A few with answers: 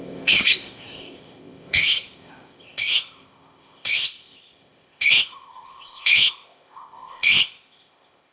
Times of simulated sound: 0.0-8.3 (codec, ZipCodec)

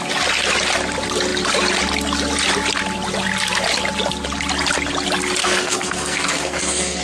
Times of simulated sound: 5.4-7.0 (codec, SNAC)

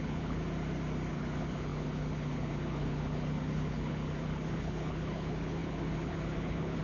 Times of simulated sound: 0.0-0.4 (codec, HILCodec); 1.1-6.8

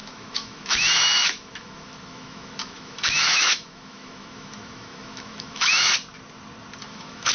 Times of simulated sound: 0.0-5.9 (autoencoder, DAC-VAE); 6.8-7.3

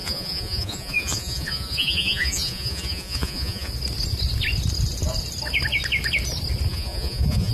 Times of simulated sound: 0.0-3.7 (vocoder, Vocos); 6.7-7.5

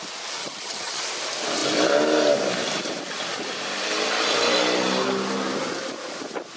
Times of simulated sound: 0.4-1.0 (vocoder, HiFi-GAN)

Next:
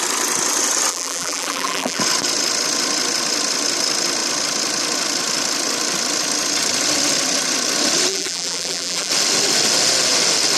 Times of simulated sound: 0.9-2.0 (vocoder, BigVGAN v2); 8.1-9.1

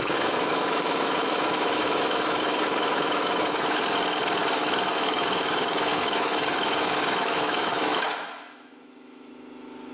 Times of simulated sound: 0.0-3.8 (autoencoder, DAC-VAE); 4.4-9.3